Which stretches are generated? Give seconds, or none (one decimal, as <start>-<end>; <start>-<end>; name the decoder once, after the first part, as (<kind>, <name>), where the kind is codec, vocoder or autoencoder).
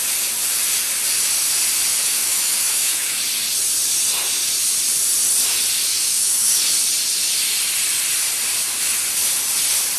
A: 2.0-3.2 (autoencoder, DAC-VAE); 5.9-6.6